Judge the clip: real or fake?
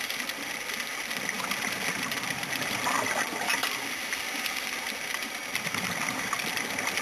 fake